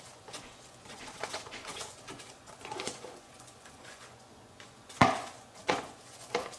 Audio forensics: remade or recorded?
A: remade